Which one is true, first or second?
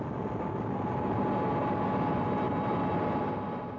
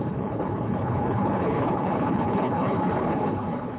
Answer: first